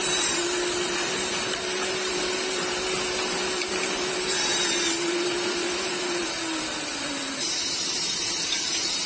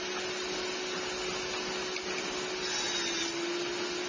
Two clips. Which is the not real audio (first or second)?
first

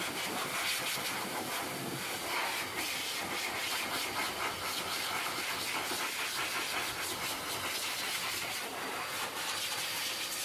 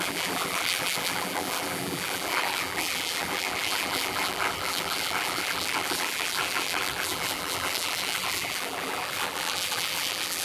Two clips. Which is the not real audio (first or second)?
second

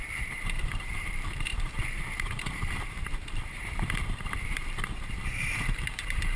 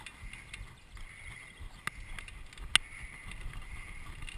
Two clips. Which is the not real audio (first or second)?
first